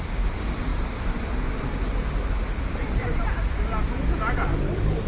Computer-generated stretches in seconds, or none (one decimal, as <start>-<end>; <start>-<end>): none

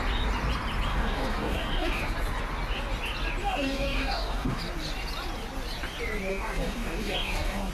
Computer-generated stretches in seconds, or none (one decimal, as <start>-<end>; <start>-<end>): 0.9-2.1; 3.4-4.6; 6.3-7.7